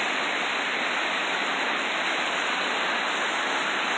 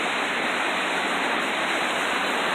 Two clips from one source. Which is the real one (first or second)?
second